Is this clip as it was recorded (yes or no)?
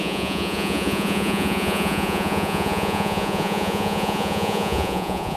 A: no